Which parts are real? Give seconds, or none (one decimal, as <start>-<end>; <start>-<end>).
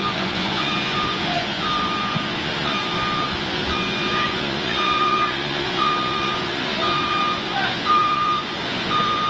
none